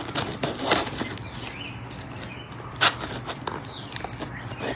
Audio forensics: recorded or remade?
recorded